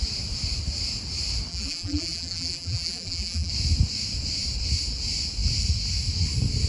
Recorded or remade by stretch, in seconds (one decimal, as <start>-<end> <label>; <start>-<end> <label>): 0.0-1.5 recorded; 1.5-3.5 remade; 3.5-6.7 recorded